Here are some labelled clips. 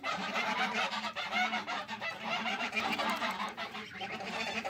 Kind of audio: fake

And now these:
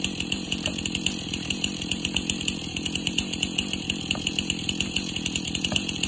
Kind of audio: fake